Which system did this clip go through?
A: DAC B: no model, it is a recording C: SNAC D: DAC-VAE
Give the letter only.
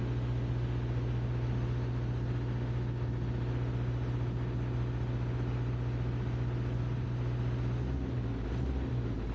B